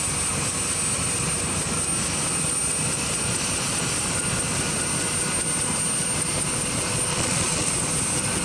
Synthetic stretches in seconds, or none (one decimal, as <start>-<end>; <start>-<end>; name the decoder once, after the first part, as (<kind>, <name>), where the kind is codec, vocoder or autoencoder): 7.1-7.7 (vocoder, Vocos)

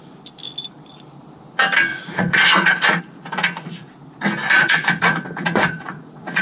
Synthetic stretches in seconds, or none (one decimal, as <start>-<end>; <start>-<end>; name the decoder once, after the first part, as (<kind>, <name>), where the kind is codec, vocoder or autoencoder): 1.9-3.0 (vocoder, Vocos); 3.4-3.9; 4.6-6.4

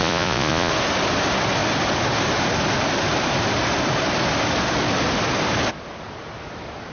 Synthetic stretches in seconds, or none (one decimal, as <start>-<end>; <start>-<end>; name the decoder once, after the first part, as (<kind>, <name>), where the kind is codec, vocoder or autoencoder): 0.0-0.7 (vocoder, Vocos)